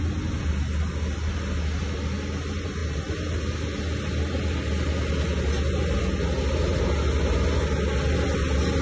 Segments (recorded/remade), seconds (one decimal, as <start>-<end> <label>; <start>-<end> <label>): 0.0-8.8 recorded